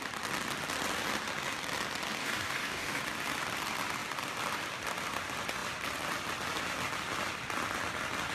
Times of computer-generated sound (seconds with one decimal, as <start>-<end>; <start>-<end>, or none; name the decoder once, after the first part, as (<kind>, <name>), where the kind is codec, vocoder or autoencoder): 2.2-3.0 (codec, DAC)